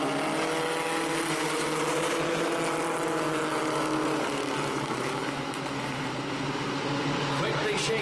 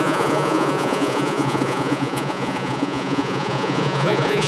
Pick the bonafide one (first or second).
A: first